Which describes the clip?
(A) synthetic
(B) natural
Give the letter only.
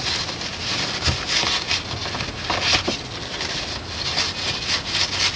B